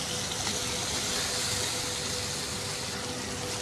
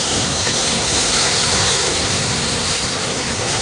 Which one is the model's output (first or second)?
second